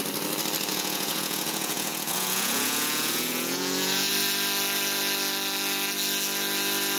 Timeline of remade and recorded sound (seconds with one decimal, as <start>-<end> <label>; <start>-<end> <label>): 0.0-0.7 recorded; 0.7-4.1 remade; 4.1-7.0 recorded